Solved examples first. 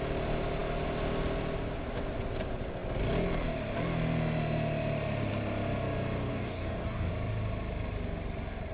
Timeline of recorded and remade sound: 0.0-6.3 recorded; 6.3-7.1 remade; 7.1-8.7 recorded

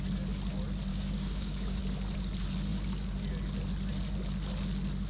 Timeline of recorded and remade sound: 0.0-0.9 recorded; 0.9-1.8 remade; 1.8-5.1 recorded

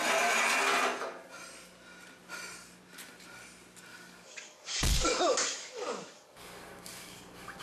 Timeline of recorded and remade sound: 0.0-3.9 recorded; 3.9-7.6 remade

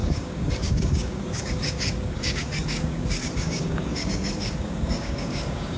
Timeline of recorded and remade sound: 0.0-5.8 remade

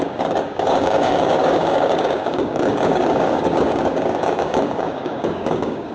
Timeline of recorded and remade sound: 0.0-5.9 remade